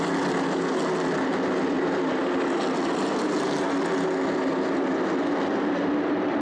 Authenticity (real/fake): real